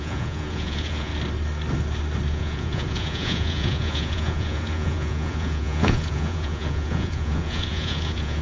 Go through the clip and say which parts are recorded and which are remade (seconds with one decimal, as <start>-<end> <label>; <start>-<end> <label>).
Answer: 0.0-1.1 remade; 1.1-2.3 recorded; 2.3-8.4 remade